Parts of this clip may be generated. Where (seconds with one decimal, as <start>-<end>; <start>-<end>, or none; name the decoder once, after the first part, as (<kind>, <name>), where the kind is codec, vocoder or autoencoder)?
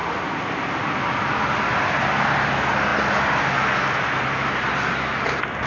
none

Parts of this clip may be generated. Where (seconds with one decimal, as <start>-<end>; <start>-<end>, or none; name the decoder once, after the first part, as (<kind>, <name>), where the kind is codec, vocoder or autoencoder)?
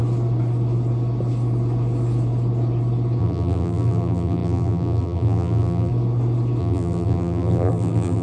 3.2-5.9 (vocoder, BigVGAN v2); 6.6-8.2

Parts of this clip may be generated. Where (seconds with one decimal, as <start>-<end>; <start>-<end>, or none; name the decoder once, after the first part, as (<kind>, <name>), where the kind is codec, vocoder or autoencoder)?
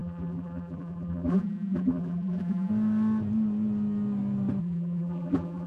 0.0-2.7 (vocoder, BigVGAN v2); 4.6-5.7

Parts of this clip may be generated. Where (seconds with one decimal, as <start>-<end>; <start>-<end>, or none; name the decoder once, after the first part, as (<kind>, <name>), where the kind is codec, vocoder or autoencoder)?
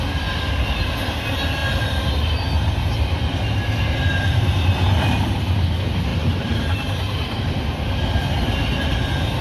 6.1-7.4 (vocoder, BigVGAN v2)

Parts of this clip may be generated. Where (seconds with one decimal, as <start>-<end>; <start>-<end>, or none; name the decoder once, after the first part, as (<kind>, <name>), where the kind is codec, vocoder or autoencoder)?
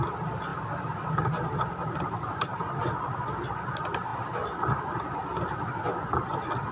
2.5-3.0 (vocoder, BigVGAN v2)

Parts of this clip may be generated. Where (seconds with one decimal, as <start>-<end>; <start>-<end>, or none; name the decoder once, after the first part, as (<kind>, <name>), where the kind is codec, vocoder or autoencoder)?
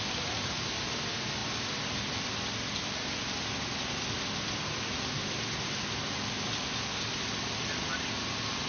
none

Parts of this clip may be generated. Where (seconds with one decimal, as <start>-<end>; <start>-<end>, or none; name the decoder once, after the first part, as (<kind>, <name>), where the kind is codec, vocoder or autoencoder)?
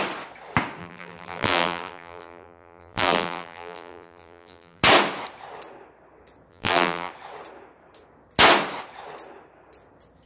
0.8-4.8 (vocoder, BigVGAN v2); 6.5-7.1